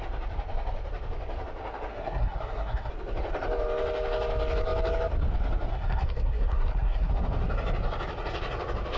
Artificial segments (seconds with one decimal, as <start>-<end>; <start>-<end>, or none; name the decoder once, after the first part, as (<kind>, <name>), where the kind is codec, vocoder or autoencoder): 1.9-2.9 (codec, SNAC); 5.7-7.1